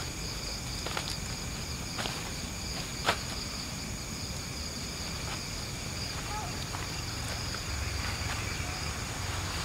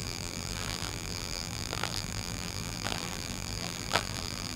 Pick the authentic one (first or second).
first